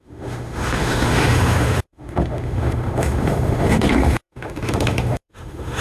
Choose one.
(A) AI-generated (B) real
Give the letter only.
A